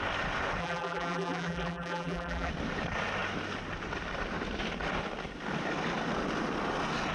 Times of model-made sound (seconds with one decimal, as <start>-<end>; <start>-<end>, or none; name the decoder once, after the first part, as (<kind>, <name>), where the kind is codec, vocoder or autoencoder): 0.6-2.5 (vocoder, BigVGAN v2)

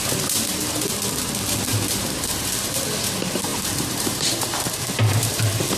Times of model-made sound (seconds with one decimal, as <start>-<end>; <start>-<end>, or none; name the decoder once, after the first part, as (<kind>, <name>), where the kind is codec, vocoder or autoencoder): 1.7-2.8 (vocoder, BigVGAN v2); 3.5-4.8

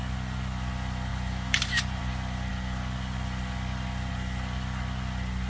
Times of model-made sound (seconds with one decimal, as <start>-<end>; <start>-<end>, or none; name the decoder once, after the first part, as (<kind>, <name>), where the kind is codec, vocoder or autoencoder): 1.1-2.0 (vocoder, BigVGAN v2)

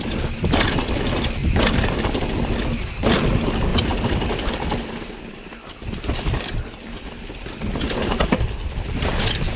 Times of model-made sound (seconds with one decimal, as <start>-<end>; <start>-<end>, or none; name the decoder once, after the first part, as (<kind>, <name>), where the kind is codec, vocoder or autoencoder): 1.4-2.0 (vocoder, BigVGAN v2); 3.7-4.5

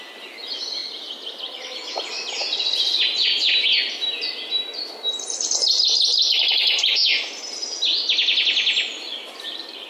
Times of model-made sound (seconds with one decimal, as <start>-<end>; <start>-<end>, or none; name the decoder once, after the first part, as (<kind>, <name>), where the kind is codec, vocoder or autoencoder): 0.8-1.6 (vocoder, BigVGAN v2)

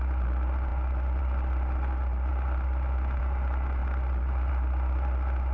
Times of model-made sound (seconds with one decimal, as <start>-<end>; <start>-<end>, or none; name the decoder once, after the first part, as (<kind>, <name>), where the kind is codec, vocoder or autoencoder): 2.3-3.2 (vocoder, BigVGAN v2); 3.8-4.5

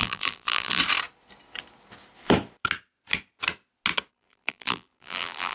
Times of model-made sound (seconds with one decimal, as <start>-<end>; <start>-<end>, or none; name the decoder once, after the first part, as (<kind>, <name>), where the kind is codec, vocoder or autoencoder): 0.0-0.8 (vocoder, BigVGAN v2); 4.1-5.5

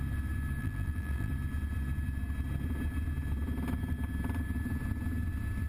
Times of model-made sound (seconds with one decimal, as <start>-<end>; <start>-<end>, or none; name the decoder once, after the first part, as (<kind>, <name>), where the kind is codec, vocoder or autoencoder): 0.6-1.3 (vocoder, BigVGAN v2)